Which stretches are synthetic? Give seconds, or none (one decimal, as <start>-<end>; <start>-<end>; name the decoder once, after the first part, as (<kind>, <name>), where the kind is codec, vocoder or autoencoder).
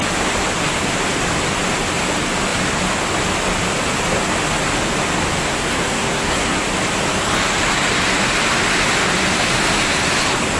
5.4-6.6 (codec, SNAC)